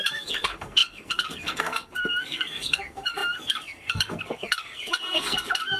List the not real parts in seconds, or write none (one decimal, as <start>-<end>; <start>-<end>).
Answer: 0.0-5.8